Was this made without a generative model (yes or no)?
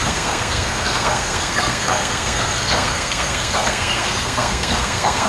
no